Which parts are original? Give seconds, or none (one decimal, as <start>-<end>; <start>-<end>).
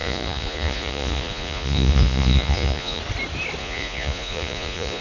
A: 3.0-3.6